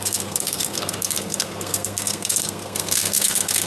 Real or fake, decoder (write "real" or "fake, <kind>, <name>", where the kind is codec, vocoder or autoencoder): fake, codec, SNAC